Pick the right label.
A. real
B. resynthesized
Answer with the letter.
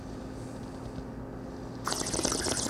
A